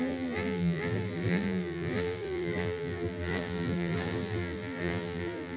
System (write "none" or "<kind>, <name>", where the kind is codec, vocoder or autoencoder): vocoder, BigVGAN v2